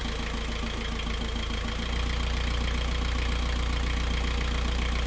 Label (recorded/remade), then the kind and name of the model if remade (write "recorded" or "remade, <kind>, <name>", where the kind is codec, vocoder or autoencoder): recorded